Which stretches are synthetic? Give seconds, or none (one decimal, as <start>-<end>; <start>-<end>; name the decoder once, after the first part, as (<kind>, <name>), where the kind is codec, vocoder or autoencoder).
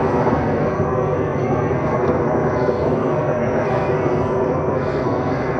0.0-5.6 (codec, SNAC)